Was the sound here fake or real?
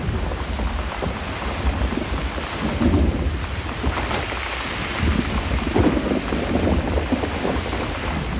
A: real